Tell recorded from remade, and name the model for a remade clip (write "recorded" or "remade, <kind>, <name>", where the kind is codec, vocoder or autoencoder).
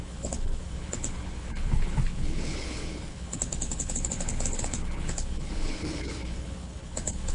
remade, codec, HILCodec